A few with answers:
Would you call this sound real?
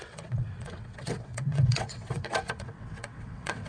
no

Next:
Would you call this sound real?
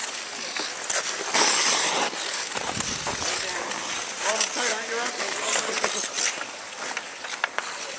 yes